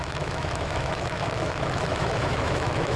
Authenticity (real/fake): fake